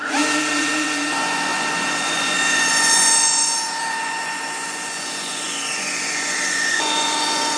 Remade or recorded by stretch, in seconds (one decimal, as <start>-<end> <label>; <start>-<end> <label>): 0.0-7.6 remade